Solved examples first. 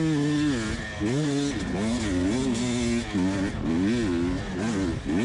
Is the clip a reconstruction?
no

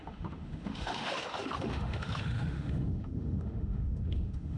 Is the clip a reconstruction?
yes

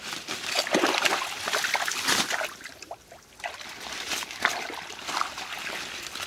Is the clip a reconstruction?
no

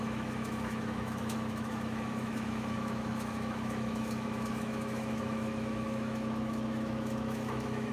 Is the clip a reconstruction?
yes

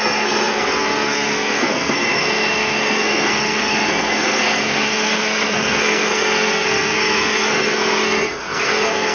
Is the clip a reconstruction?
yes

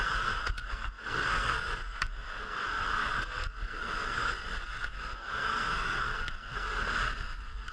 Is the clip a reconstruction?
yes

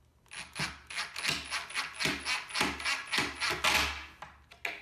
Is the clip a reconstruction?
no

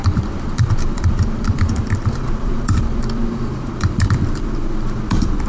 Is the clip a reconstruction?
yes